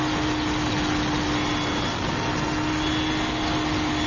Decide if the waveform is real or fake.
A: real